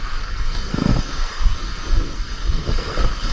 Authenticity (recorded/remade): remade